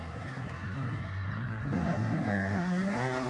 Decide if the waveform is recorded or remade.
remade